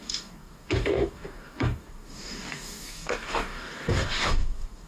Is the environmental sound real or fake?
fake